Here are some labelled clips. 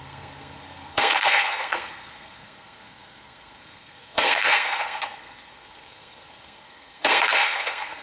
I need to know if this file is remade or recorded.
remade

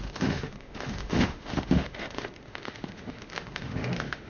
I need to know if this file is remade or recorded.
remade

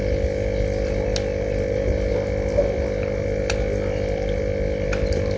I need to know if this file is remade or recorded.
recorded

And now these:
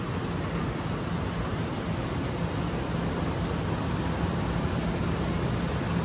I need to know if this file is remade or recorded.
recorded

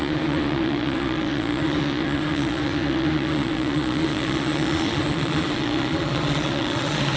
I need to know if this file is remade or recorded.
remade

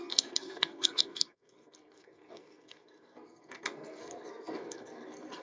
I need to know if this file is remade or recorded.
remade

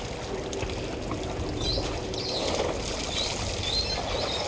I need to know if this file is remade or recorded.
recorded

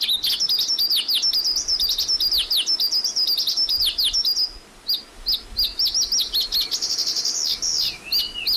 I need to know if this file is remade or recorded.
recorded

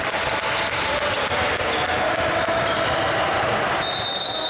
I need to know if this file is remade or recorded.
recorded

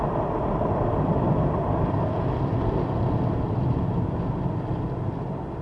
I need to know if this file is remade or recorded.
recorded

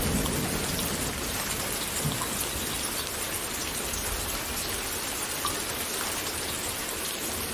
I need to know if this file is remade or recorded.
recorded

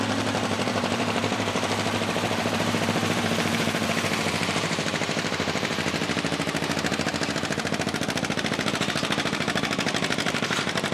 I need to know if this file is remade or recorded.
remade